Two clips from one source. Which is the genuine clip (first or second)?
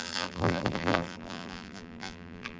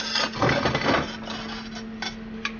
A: second